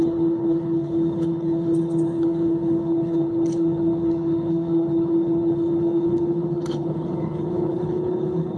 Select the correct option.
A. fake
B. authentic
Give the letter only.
A